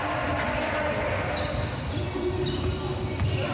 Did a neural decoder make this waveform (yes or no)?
no